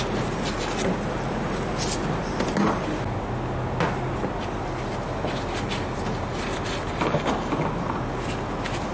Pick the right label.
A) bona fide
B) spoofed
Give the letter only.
A